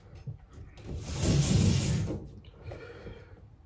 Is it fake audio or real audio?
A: real